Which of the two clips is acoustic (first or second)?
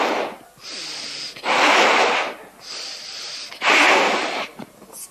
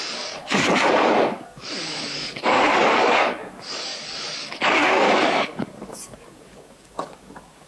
first